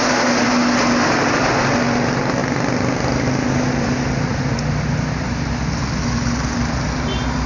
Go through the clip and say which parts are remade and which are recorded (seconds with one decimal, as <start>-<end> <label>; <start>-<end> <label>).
0.0-7.5 recorded